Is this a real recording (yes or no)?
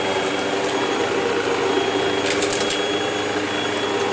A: yes